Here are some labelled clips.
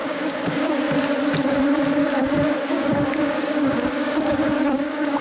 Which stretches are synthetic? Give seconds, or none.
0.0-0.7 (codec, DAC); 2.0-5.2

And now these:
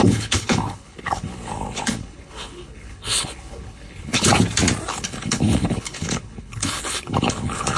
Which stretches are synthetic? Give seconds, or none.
0.0-4.3 (codec, HILCodec); 4.9-7.8

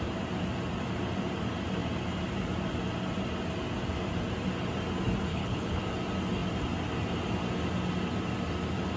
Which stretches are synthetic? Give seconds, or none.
5.3-5.8 (codec, HILCodec)